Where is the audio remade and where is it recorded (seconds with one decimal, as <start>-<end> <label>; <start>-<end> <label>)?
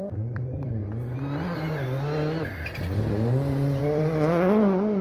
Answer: 0.0-0.8 remade; 0.8-3.8 recorded; 3.8-5.0 remade